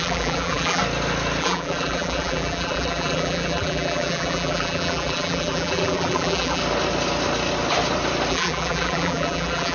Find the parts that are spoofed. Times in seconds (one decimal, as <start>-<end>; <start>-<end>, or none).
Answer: 0.0-0.8; 1.4-6.6; 8.3-9.7